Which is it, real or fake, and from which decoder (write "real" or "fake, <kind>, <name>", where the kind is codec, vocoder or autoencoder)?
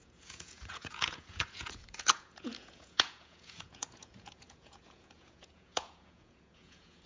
fake, vocoder, Vocos